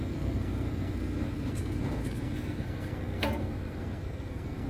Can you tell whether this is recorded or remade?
remade